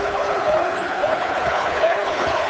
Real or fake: fake